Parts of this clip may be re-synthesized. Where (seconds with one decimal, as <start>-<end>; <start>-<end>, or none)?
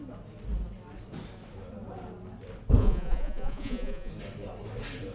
2.8-4.1